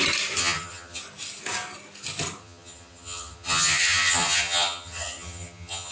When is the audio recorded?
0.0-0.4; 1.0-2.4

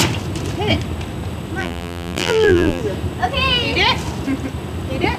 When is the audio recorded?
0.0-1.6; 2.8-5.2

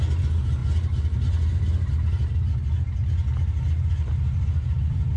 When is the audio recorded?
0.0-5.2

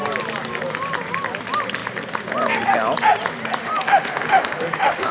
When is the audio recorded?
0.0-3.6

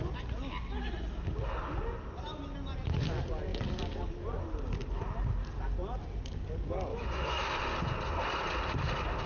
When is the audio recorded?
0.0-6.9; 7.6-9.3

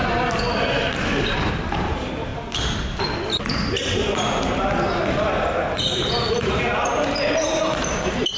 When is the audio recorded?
0.0-1.5; 2.3-6.3

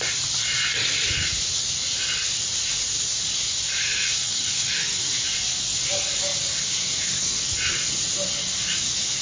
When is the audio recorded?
0.0-3.8; 4.9-9.2